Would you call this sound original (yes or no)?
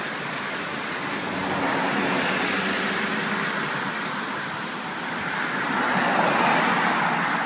yes